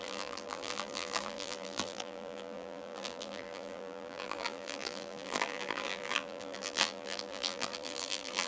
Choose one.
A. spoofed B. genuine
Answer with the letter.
A